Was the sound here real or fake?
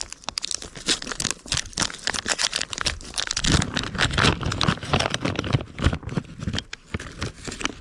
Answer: real